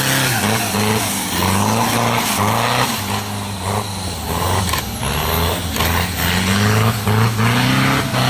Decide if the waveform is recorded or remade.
recorded